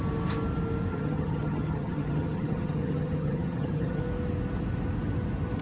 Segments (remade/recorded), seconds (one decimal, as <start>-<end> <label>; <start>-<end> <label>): 0.0-0.9 recorded; 0.9-4.0 remade; 4.0-5.6 recorded